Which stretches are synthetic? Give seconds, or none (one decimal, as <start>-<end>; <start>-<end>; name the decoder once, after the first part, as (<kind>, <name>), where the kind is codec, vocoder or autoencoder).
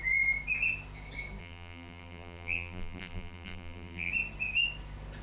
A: 1.4-4.1 (vocoder, BigVGAN v2)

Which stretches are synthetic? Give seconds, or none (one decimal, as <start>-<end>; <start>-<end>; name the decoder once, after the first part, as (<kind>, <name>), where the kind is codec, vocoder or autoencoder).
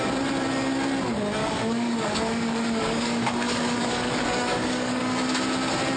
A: 1.4-5.0 (codec, DAC)